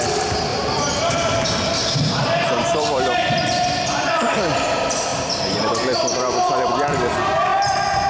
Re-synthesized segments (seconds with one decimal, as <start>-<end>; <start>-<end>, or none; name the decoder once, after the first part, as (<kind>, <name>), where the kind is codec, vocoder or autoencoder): 0.5-4.3 (vocoder, BigVGAN v2); 5.1-6.7